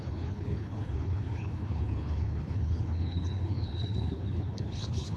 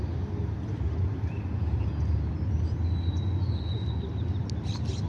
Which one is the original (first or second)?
second